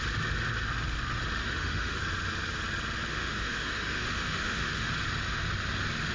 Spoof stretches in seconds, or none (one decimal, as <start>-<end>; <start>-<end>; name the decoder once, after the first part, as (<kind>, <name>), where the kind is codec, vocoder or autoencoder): 1.4-2.0 (autoencoder, DAC-VAE); 3.1-4.9